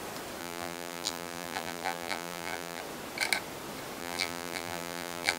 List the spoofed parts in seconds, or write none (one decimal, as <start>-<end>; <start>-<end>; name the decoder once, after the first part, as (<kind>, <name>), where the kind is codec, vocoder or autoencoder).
0.4-2.8 (vocoder, BigVGAN v2); 4.0-5.4

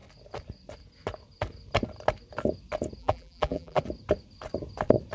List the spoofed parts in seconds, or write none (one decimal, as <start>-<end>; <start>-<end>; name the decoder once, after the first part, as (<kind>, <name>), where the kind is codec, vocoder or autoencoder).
3.0-3.8 (vocoder, BigVGAN v2)

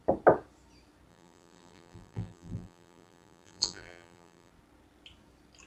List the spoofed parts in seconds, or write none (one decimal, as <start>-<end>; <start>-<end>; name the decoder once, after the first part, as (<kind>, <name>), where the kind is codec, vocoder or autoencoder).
1.1-4.5 (vocoder, BigVGAN v2)

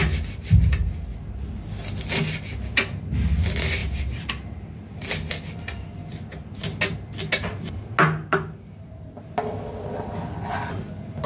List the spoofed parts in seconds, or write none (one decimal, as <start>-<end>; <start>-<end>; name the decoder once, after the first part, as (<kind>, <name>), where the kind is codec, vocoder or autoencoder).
3.8-4.3 (vocoder, BigVGAN v2)

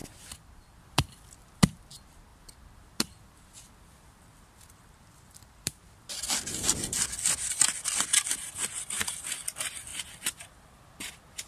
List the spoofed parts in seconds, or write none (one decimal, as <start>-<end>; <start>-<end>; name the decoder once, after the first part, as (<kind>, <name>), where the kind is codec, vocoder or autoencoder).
0.0-0.8 (vocoder, BigVGAN v2); 2.3-7.1; 9.9-10.9

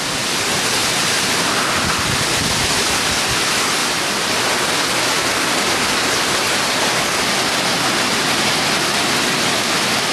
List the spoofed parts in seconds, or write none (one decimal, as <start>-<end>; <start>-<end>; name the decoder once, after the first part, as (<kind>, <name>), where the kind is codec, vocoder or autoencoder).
0.8-1.5 (vocoder, BigVGAN v2); 3.8-6.6

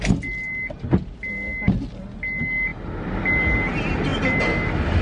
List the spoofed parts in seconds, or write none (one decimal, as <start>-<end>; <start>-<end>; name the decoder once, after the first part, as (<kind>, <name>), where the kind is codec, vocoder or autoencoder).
none

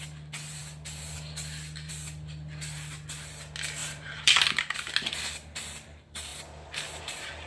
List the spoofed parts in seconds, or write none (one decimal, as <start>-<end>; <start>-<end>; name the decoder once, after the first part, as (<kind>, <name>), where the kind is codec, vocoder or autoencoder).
3.8-4.9 (vocoder, BigVGAN v2)